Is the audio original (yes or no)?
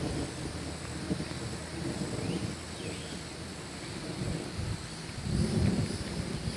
yes